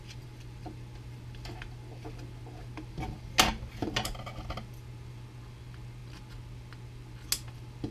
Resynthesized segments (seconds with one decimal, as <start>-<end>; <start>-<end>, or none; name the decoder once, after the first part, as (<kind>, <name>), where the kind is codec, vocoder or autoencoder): none